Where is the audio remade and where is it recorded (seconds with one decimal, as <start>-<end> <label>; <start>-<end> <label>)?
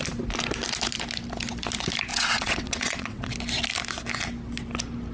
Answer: 0.0-2.1 recorded; 2.1-3.3 remade; 3.3-5.1 recorded